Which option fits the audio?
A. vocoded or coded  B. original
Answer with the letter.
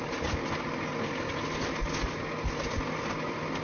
B